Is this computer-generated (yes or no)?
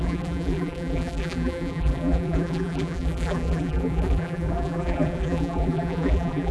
yes